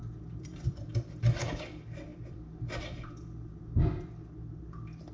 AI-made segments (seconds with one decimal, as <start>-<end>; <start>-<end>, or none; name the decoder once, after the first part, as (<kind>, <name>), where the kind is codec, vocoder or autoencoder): 0.0-5.1 (vocoder, BigVGAN v2)